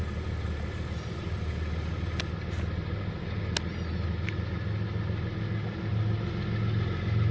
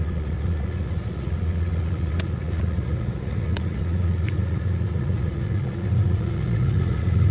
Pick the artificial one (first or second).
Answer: second